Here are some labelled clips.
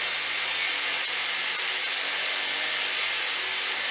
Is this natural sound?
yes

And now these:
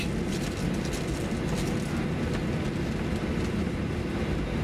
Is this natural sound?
yes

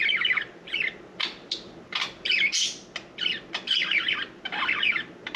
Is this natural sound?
yes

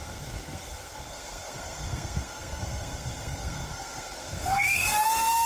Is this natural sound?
no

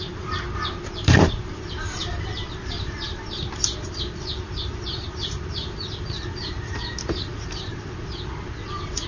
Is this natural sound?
no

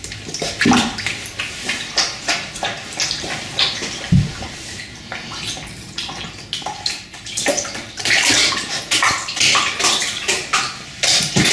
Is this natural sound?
yes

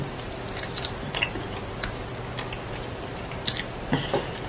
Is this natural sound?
yes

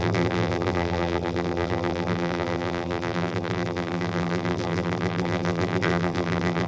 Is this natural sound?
no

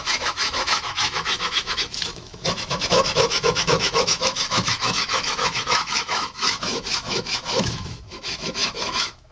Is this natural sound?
no